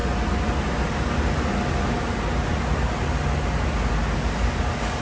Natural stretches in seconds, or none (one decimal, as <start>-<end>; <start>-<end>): 0.0-5.0